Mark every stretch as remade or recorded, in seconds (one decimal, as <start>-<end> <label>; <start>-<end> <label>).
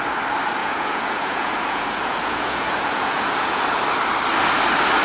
0.0-0.6 recorded; 0.6-3.6 remade; 3.6-5.0 recorded